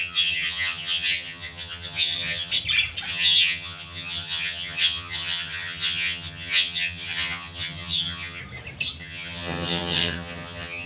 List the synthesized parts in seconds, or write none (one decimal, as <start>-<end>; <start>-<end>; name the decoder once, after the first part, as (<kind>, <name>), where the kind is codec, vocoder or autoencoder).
0.0-2.5 (vocoder, HiFi-GAN); 3.1-8.4; 9.0-10.9